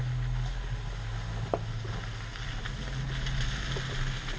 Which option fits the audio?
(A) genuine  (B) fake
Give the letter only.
A